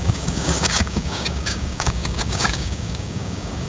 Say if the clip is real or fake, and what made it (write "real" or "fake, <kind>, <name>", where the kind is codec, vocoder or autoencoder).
fake, codec, DAC